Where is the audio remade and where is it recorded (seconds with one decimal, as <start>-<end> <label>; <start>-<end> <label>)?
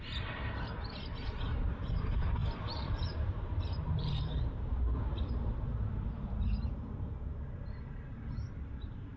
0.0-9.2 remade